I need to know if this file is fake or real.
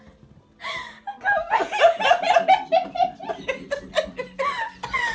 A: real